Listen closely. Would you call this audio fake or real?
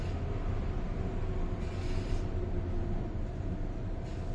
real